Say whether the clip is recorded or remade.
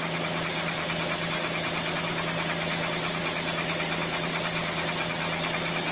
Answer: recorded